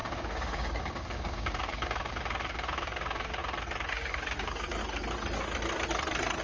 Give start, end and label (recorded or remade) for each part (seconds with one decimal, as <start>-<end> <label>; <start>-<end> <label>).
0.0-3.4 remade; 3.4-3.9 recorded; 3.9-4.8 remade; 4.8-6.4 recorded